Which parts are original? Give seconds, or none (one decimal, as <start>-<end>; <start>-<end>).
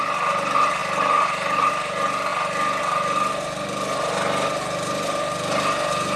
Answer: 0.0-6.2